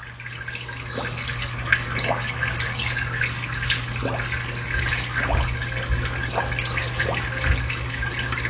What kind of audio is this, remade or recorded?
recorded